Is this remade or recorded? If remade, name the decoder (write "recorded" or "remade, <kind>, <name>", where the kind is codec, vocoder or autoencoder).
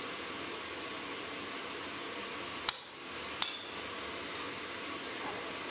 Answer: recorded